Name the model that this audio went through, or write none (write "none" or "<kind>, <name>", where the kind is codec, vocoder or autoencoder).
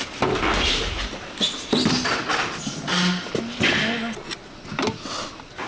none